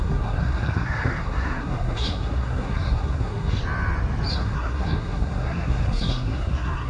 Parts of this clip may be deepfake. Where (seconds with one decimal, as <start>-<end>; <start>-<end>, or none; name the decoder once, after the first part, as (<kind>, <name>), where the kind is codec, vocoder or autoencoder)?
0.0-3.6 (codec, SNAC); 4.3-6.9